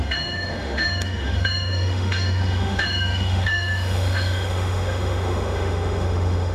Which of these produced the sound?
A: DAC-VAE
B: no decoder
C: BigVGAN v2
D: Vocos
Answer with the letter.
A